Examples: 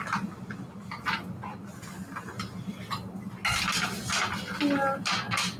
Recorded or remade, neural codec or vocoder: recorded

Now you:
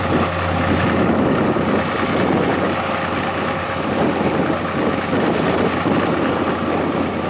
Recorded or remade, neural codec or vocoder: recorded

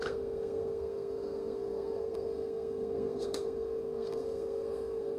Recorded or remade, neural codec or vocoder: remade, codec, SNAC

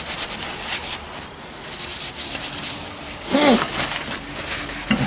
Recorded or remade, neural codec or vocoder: recorded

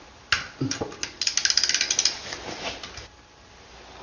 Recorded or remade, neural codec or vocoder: recorded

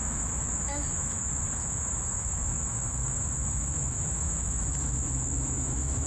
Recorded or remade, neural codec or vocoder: remade, autoencoder, DAC-VAE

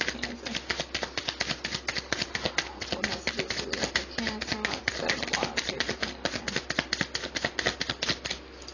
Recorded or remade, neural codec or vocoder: recorded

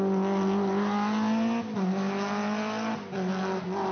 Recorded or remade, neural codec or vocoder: recorded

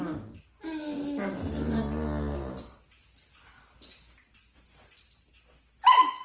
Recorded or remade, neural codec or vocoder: recorded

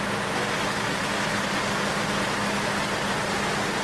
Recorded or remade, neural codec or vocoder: recorded